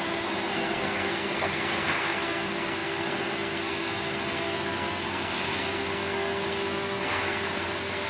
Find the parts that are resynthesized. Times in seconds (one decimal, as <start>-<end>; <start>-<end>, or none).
0.0-8.1